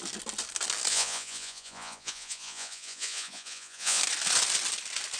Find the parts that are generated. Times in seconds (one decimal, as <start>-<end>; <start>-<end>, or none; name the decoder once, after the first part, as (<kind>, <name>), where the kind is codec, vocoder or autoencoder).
0.9-4.0 (vocoder, Vocos)